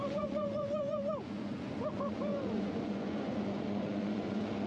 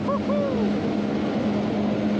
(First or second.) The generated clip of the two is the first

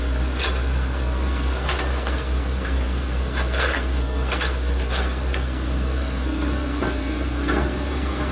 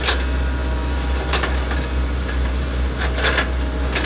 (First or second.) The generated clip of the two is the first